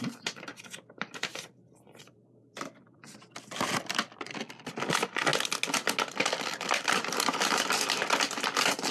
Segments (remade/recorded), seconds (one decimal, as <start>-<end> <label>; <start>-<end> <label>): 0.0-5.3 remade; 5.3-6.1 recorded; 6.1-8.9 remade